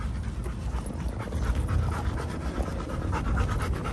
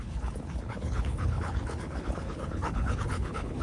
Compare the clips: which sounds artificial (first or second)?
second